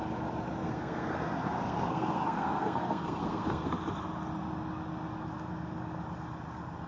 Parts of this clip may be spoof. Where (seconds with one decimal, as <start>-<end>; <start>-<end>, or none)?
0.6-3.7